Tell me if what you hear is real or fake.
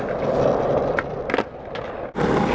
real